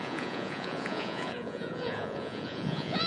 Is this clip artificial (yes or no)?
yes